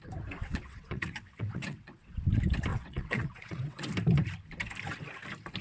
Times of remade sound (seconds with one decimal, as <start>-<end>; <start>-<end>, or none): 0.4-2.3; 2.7-3.8